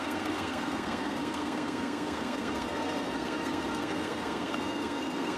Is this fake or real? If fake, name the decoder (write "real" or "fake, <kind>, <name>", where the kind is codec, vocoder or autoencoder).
fake, codec, SNAC